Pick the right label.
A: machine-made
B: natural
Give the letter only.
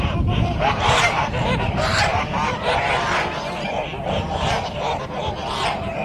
A